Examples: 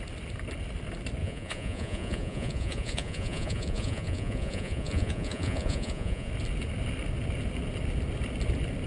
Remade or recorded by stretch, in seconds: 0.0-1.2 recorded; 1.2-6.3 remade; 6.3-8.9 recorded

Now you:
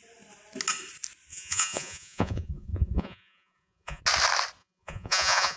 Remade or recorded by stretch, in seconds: 0.0-1.3 recorded; 1.3-4.0 remade; 4.0-4.6 recorded; 4.6-5.6 remade

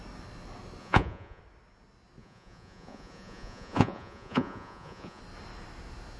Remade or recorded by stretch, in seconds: 0.0-0.8 recorded; 0.8-1.4 remade; 1.4-2.2 recorded; 2.2-5.2 remade; 5.2-6.2 recorded

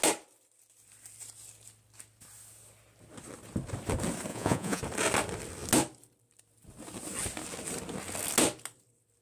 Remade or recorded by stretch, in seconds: 0.0-4.3 recorded; 4.3-4.8 remade; 4.8-9.2 recorded

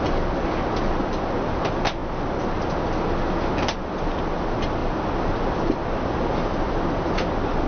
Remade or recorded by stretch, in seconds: 0.0-7.7 recorded